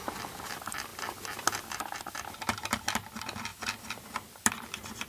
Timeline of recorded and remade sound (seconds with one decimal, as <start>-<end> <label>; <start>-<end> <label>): 0.0-3.5 recorded; 3.5-4.5 remade; 4.5-5.1 recorded

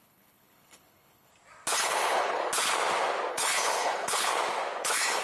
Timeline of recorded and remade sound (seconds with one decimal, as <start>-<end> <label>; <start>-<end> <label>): 0.0-1.3 remade; 1.3-1.8 recorded; 1.8-2.4 remade; 2.4-3.3 recorded; 3.3-4.3 remade; 4.3-4.8 recorded; 4.8-5.2 remade

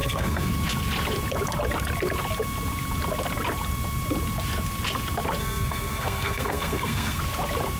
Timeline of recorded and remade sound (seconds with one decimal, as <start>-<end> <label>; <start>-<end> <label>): 0.0-0.5 remade; 0.5-5.4 recorded; 5.4-7.2 remade; 7.2-7.8 recorded

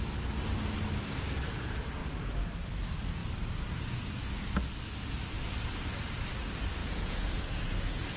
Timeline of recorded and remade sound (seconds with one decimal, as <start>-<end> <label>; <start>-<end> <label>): 0.0-6.8 recorded; 6.8-8.2 remade

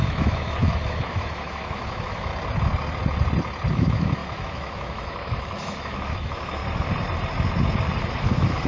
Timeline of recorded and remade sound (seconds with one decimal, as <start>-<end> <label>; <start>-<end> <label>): 0.0-2.3 remade; 2.3-3.7 recorded; 3.7-6.6 remade; 6.6-8.0 recorded; 8.0-8.7 remade

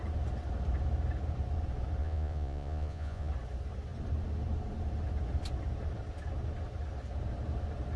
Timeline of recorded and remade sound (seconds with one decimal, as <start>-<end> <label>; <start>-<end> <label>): 0.0-2.0 recorded; 2.0-3.3 remade; 3.3-8.0 recorded